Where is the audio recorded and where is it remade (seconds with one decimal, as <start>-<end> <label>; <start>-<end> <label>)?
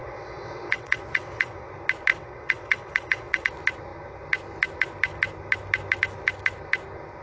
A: 0.0-1.7 remade; 1.7-2.1 recorded; 2.1-3.5 remade; 3.5-7.2 recorded